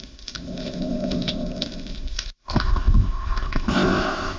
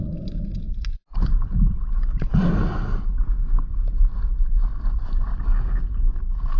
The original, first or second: second